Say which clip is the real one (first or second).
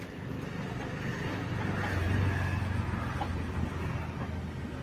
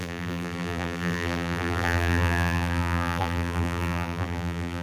first